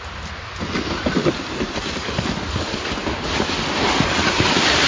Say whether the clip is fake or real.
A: real